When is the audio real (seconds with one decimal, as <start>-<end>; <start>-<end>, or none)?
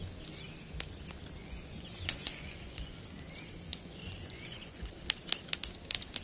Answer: 0.0-1.4; 3.0-3.7; 4.9-6.2